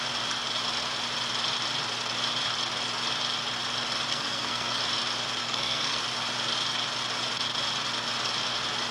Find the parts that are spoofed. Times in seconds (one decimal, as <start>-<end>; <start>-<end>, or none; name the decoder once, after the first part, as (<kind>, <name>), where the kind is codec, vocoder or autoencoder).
4.1-4.8 (codec, SNAC); 5.4-6.0